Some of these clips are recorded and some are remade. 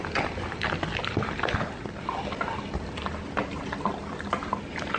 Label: recorded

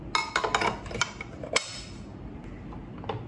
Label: recorded